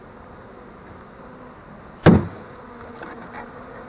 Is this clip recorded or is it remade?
recorded